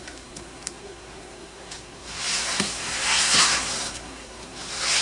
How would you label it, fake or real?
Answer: fake